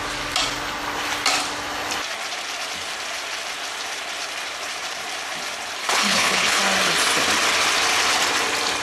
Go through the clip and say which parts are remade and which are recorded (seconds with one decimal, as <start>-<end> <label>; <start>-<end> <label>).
0.0-5.8 recorded; 5.8-6.6 remade; 6.6-8.8 recorded